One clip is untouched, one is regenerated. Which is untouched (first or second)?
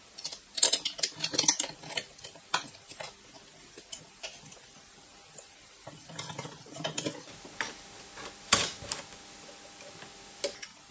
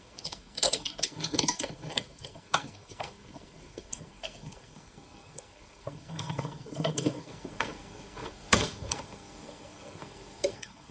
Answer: first